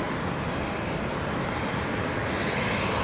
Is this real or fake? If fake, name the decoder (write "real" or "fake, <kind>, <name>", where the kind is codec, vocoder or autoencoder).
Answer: real